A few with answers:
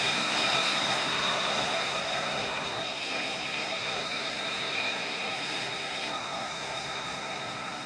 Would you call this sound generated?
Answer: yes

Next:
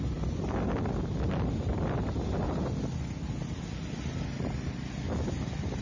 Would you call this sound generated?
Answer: no